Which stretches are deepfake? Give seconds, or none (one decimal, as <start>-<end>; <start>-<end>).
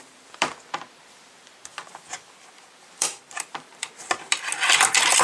1.7-3.9